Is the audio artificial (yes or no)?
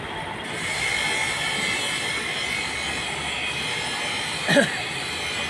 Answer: no